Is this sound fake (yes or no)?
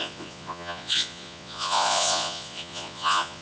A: yes